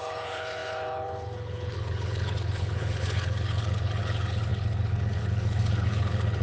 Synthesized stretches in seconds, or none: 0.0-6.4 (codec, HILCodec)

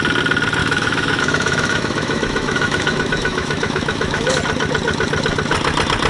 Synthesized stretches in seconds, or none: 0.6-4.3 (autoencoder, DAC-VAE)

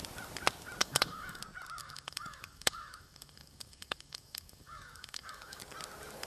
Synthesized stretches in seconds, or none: 0.8-1.4 (codec, DAC); 1.8-5.6

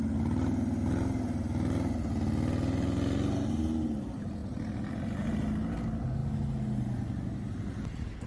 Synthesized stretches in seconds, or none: none